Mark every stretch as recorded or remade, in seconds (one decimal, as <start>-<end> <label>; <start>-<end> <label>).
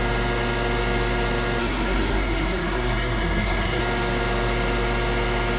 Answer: 0.0-1.6 recorded; 1.6-3.8 remade; 3.8-5.6 recorded